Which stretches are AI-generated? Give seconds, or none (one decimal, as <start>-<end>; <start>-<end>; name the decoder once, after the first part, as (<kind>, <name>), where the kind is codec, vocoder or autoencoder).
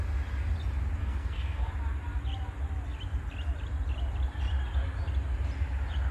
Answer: 1.0-1.7 (codec, SNAC)